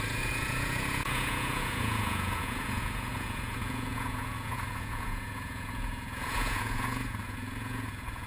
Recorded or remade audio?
remade